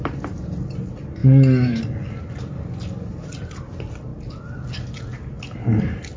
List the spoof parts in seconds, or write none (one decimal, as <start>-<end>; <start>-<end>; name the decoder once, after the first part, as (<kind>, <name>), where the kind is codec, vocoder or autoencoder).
1.2-1.8 (autoencoder, DAC-VAE)